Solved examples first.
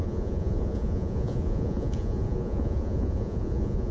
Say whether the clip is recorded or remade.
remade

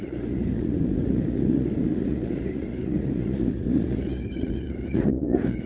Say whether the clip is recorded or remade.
remade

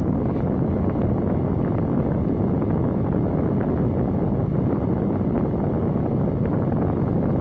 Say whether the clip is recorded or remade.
recorded